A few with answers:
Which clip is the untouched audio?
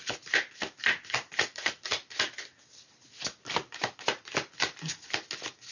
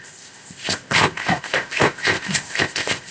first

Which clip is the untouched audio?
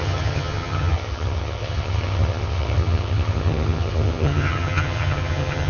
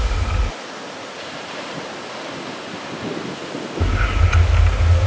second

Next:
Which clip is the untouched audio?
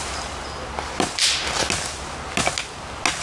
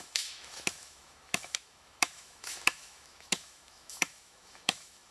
first